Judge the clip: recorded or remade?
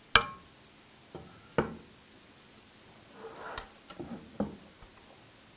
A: recorded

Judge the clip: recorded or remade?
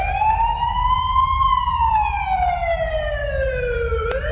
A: recorded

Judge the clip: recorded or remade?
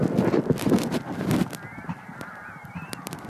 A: remade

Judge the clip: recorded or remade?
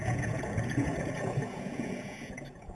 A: remade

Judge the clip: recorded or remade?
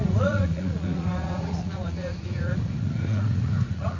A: remade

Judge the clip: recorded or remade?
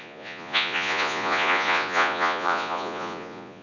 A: remade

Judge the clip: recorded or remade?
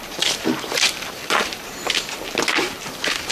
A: remade